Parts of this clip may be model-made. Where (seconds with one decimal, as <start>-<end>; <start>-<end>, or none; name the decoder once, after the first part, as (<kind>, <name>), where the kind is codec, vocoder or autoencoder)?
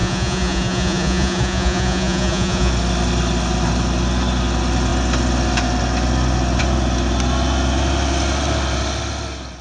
0.0-2.7 (vocoder, Vocos)